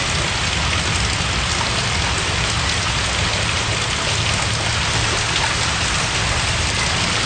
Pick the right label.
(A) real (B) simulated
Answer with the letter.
A